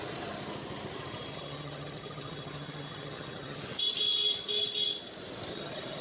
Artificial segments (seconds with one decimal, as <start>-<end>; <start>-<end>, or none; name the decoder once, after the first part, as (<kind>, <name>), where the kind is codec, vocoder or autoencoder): 1.3-3.6 (vocoder, HiFi-GAN); 5.5-6.0